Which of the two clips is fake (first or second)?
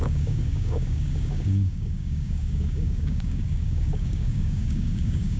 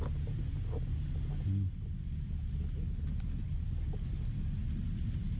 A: first